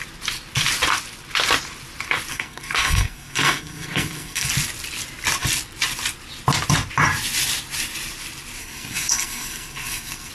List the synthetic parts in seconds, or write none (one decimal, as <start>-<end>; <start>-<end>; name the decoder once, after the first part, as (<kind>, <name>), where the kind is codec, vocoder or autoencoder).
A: 2.3-4.5 (codec, SNAC); 8.6-10.3